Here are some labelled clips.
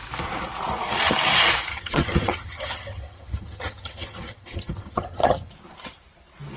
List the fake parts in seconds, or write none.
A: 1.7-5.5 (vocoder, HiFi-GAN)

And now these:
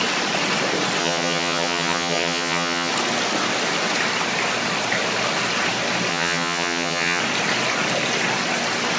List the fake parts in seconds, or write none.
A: 1.0-2.9 (vocoder, HiFi-GAN); 6.1-7.2

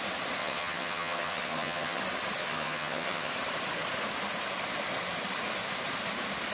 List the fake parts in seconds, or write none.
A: 0.4-2.0 (vocoder, HiFi-GAN); 2.4-3.3

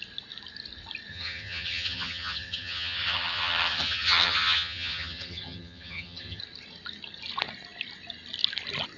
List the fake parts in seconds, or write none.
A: 1.1-6.4 (vocoder, HiFi-GAN)

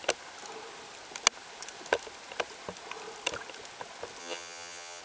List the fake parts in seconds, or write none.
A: 4.2-5.0 (vocoder, HiFi-GAN)

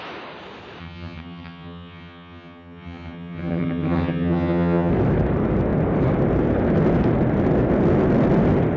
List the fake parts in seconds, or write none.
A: 0.8-4.9 (vocoder, HiFi-GAN)

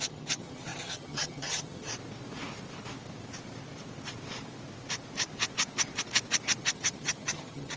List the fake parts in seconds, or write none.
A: 0.0-1.9 (vocoder, HiFi-GAN); 6.6-7.8